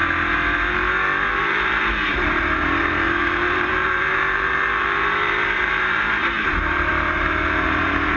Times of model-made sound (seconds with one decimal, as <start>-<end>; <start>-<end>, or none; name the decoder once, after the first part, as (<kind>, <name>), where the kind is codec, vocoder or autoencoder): 1.3-8.2 (vocoder, BigVGAN v2)